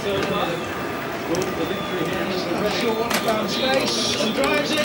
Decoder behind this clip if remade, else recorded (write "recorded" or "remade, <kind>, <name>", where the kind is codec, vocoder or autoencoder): recorded